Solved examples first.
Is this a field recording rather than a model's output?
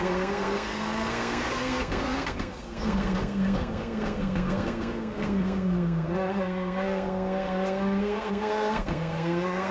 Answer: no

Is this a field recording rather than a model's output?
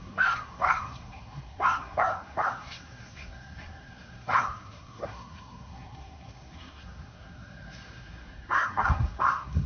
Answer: no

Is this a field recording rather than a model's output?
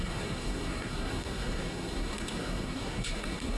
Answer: no